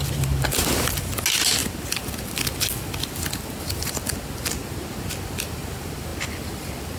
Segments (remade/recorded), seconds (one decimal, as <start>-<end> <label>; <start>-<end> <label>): 0.0-7.0 recorded